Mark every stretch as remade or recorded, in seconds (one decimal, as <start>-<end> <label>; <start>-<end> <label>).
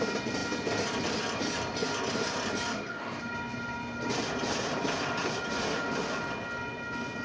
0.0-2.7 recorded; 2.7-3.2 remade; 3.2-7.2 recorded